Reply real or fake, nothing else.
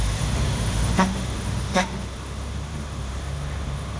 fake